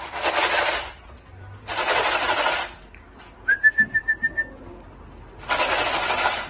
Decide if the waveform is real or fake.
real